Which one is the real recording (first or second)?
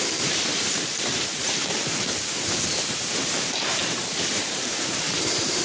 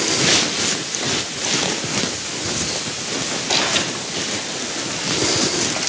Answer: second